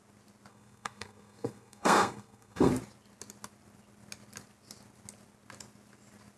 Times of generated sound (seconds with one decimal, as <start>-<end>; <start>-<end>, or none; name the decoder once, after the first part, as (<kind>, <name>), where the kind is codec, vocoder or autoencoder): 0.5-2.7 (codec, SNAC)